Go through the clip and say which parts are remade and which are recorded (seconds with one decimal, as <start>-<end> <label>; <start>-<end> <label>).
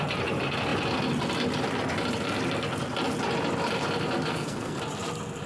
0.0-4.3 recorded; 4.3-4.8 remade; 4.8-5.5 recorded